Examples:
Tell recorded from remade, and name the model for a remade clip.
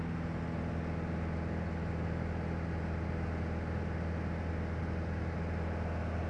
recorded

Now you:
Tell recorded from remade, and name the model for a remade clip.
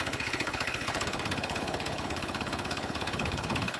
remade, codec, HILCodec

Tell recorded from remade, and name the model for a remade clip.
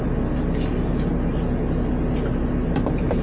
recorded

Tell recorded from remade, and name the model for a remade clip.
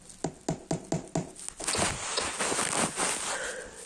recorded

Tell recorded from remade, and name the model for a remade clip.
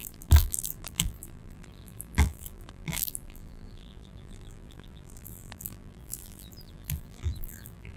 remade, vocoder, BigVGAN v2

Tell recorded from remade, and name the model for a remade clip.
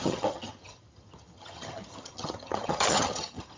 remade, vocoder, HiFi-GAN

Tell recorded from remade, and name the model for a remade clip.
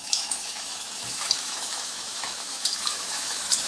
remade, autoencoder, DAC-VAE